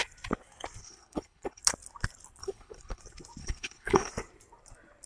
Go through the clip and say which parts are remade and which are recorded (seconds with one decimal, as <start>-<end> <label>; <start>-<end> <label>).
0.0-0.8 recorded; 0.8-1.6 remade; 1.6-2.4 recorded; 2.4-3.0 remade; 3.0-3.4 recorded; 3.4-4.1 remade; 4.1-5.1 recorded